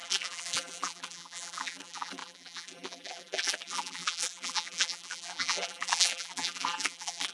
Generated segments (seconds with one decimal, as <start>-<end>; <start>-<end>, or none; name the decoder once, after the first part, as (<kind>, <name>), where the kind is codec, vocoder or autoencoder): 0.0-7.3 (vocoder, BigVGAN v2)